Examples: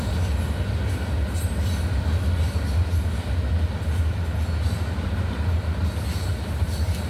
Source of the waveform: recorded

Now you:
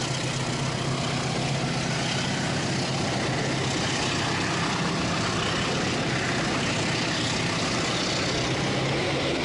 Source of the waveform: recorded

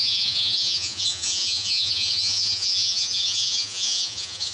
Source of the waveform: remade